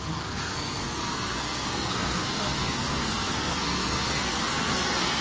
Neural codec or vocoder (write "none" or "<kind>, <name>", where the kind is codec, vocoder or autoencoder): codec, SNAC